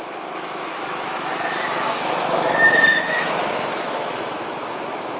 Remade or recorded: remade